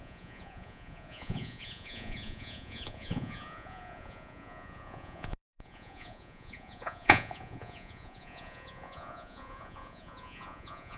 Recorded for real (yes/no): no